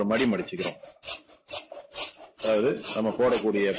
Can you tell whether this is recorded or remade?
recorded